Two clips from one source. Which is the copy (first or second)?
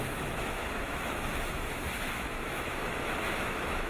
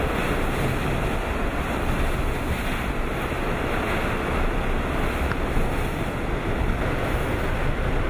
first